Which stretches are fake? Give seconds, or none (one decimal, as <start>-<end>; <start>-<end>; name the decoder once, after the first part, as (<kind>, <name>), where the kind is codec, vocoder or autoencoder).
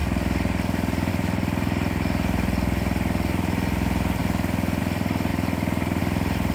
none